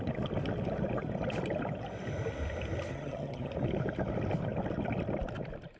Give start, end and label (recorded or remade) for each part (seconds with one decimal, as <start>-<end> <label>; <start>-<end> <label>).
0.0-2.9 recorded; 2.9-3.5 remade; 3.5-5.8 recorded